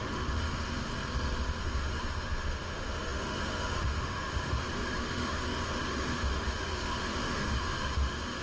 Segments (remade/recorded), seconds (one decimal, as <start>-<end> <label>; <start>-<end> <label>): 0.0-0.9 remade; 0.9-1.6 recorded; 1.6-8.4 remade